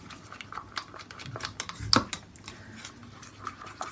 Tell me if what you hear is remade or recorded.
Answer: recorded